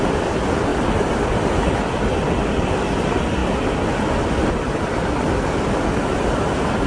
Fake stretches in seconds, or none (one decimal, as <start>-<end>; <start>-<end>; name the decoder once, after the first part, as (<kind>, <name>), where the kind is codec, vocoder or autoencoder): none